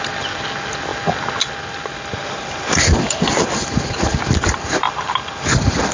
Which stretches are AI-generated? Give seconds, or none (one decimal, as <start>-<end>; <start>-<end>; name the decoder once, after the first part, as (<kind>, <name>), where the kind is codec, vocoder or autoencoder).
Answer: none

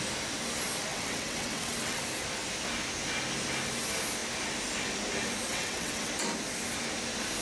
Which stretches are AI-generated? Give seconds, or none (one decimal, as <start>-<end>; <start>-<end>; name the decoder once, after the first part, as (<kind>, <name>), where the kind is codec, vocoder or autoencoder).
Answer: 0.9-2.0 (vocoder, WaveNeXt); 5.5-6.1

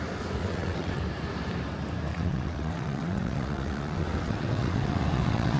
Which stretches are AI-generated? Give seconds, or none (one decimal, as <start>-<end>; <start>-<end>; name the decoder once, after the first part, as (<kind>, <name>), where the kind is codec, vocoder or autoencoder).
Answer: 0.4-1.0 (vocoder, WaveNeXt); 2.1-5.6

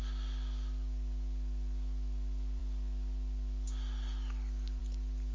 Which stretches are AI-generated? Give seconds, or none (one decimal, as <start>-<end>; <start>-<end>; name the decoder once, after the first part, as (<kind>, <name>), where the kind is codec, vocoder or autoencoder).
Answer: none